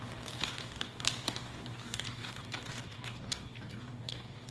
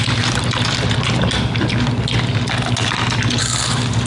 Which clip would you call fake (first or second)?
first